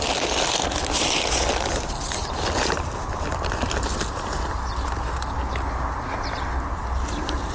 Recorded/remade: recorded